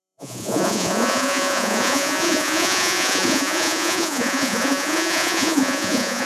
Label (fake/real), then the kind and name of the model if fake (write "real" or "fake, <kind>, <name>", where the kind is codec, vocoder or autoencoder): fake, vocoder, Vocos